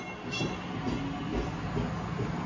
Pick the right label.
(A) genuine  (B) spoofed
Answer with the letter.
A